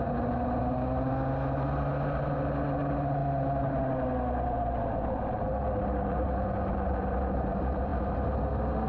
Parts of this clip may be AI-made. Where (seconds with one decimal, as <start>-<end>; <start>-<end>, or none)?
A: none